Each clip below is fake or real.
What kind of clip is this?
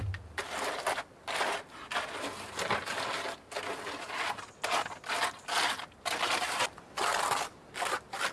real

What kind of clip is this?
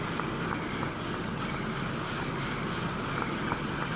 real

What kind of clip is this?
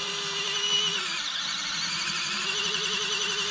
real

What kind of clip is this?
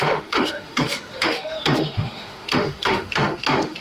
fake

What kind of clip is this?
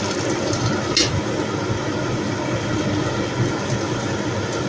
real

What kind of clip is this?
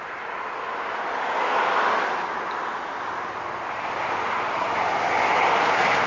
real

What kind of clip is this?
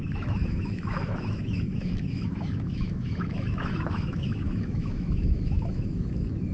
fake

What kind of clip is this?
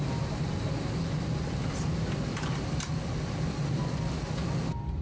real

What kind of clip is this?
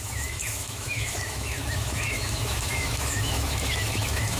fake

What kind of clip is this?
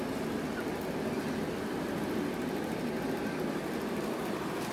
real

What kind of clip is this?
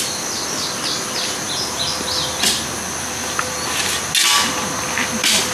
real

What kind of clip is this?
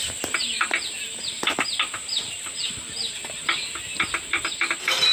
real